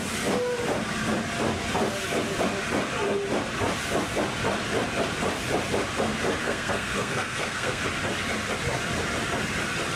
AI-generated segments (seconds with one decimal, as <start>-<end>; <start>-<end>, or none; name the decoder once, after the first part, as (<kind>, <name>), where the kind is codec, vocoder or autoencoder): 6.4-7.8 (codec, SNAC)